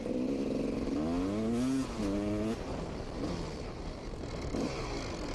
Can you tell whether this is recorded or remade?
recorded